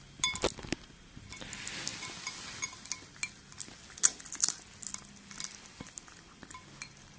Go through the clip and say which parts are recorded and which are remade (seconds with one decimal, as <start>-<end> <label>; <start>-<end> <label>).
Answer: 0.0-7.2 recorded